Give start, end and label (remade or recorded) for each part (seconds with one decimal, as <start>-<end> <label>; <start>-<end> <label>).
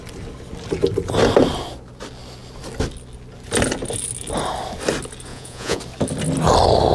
0.0-5.3 recorded; 5.3-5.8 remade; 5.8-6.9 recorded